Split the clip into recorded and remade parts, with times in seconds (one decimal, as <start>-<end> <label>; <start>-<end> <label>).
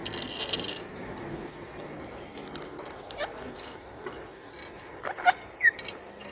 0.0-1.0 recorded; 1.0-6.3 remade